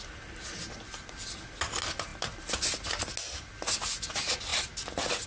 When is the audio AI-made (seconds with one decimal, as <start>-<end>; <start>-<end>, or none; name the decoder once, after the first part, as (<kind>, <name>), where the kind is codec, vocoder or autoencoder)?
none